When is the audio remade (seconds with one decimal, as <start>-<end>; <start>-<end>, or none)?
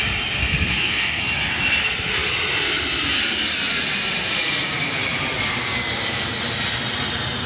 0.5-1.2